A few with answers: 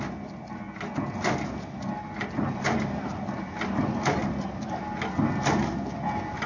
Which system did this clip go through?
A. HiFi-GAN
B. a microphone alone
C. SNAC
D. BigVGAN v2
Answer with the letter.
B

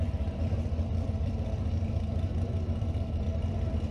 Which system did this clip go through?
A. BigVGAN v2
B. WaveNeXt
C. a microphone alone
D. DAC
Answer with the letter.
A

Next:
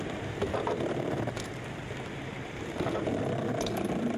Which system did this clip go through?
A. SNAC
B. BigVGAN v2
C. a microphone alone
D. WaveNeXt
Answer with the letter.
C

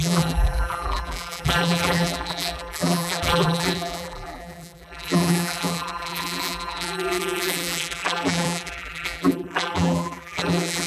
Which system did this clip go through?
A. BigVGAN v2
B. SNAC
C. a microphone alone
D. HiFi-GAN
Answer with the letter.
A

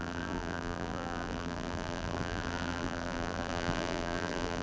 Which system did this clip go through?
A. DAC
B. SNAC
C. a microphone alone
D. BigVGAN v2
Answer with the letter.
D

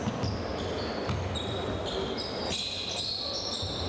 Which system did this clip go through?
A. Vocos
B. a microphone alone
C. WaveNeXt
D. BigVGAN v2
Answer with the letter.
B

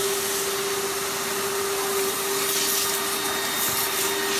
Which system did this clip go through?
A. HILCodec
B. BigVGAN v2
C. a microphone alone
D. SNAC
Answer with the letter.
C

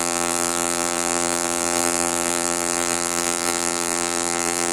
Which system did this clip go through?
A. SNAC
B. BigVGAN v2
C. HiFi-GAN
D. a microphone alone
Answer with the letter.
B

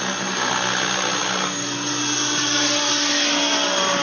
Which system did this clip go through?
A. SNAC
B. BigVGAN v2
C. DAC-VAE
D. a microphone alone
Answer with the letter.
D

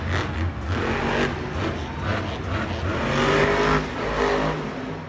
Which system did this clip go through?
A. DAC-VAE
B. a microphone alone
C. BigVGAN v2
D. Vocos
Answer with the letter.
B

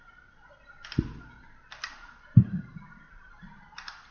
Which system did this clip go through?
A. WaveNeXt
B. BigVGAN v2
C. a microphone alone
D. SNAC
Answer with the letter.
B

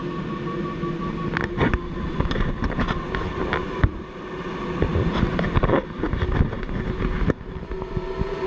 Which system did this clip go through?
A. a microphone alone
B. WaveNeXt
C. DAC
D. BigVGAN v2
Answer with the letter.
A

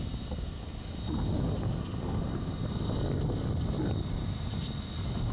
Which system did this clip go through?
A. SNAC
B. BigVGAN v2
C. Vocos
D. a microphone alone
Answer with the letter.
D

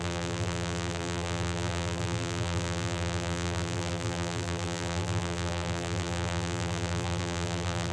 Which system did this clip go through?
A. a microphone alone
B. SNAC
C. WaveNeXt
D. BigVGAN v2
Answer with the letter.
D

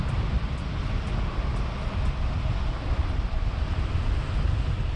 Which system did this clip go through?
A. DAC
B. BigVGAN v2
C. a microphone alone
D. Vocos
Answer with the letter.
B